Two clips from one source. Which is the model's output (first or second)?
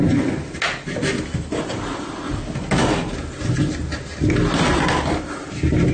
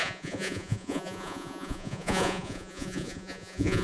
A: second